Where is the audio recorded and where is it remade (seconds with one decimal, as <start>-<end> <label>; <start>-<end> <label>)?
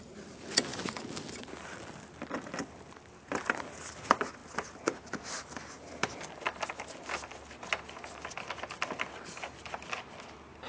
0.0-10.7 recorded